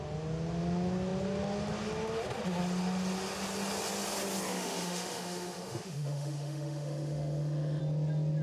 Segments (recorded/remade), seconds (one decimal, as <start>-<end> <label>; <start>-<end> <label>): 0.0-4.5 recorded; 4.5-7.8 remade; 7.8-8.4 recorded